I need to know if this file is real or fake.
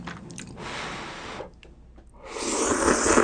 real